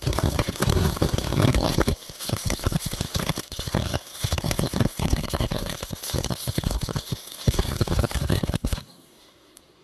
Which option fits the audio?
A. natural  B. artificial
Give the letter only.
B